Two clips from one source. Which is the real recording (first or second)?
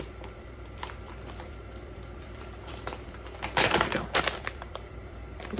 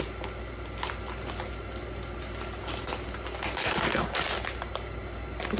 second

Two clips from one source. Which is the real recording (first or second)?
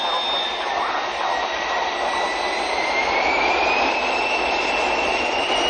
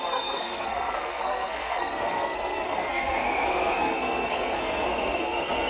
first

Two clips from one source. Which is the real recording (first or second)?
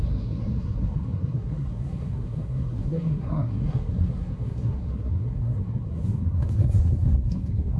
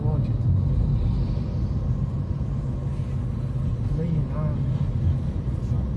second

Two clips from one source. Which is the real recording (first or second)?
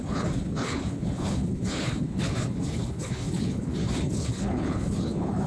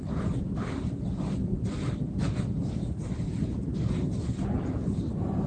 second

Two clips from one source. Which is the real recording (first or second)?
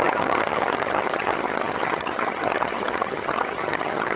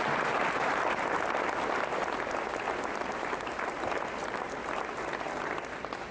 second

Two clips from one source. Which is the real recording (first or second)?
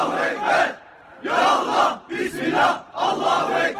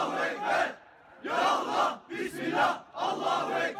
second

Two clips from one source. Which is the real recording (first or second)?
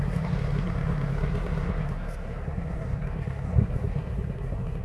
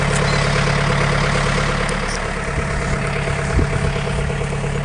second